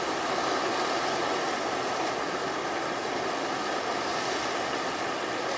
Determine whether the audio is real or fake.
real